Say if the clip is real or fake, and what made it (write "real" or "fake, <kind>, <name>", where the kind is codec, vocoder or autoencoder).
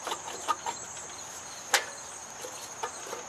real